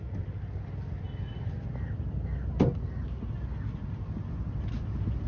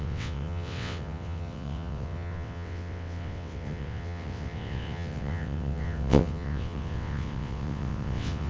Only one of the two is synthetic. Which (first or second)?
second